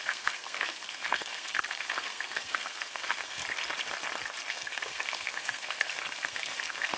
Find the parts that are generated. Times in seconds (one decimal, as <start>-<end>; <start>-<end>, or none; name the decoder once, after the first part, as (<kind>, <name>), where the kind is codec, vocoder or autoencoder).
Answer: 0.0-3.4 (codec, SNAC); 4.5-7.0